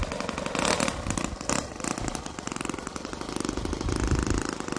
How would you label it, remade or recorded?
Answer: recorded